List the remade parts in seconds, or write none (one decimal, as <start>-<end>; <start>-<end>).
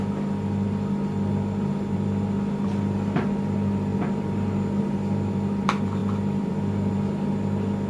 0.0-3.9; 4.8-7.9